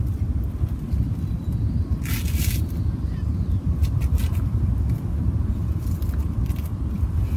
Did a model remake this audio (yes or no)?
no